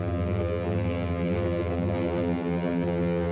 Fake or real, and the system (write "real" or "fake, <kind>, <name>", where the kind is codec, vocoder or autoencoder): fake, vocoder, BigVGAN v2